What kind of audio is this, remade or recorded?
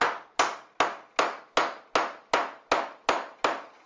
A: recorded